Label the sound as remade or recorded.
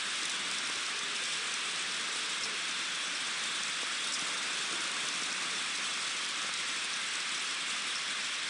recorded